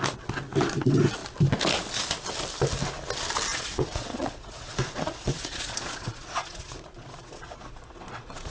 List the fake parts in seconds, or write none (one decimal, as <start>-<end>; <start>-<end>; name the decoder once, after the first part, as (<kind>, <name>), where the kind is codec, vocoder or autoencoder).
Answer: 3.5-8.5 (vocoder, Vocos)